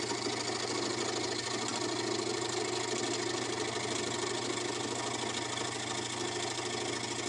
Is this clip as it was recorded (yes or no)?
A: yes